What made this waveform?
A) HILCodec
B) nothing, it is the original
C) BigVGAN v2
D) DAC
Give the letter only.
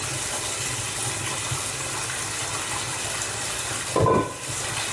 B